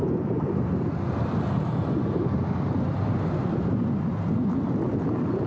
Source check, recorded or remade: recorded